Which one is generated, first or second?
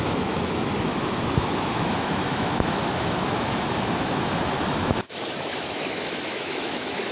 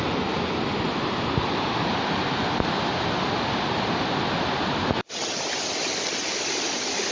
first